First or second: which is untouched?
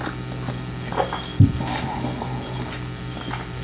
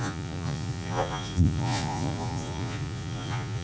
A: first